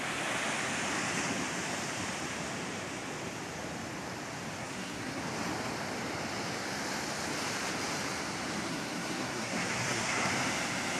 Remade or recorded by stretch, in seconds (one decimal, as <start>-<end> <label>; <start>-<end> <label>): 0.0-4.6 recorded; 4.6-5.2 remade; 5.2-8.7 recorded; 8.7-10.3 remade; 10.3-11.0 recorded